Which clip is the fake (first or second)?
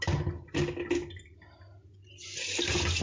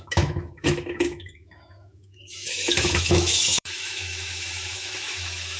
second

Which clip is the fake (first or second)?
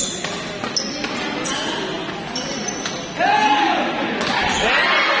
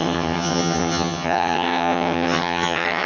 second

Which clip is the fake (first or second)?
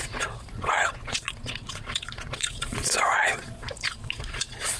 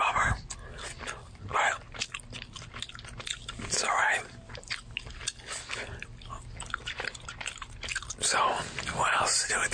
first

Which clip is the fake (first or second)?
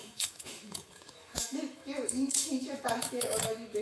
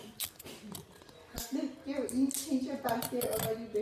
first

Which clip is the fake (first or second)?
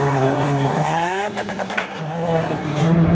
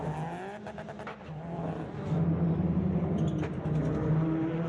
first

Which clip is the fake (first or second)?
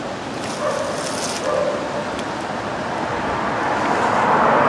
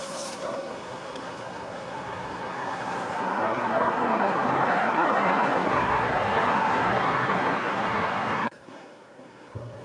second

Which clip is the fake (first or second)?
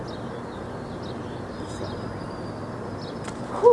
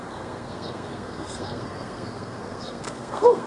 second